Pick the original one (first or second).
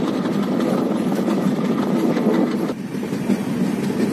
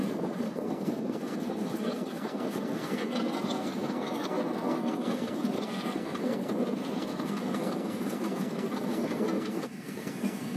first